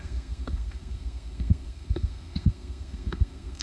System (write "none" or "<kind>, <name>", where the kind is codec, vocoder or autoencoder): codec, SNAC